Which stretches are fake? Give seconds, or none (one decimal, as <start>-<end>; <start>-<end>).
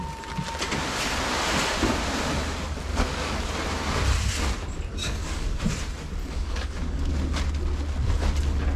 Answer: 2.9-3.5; 5.0-5.6; 6.2-7.1